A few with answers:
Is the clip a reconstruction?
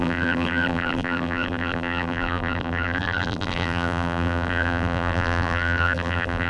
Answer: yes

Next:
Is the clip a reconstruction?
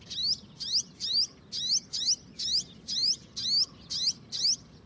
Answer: no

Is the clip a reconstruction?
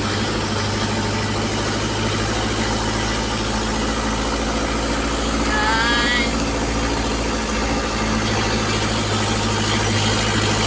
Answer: no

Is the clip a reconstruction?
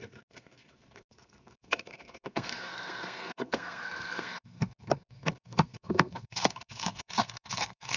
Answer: yes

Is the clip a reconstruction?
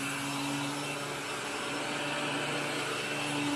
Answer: no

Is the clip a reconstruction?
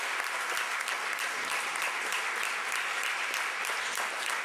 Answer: no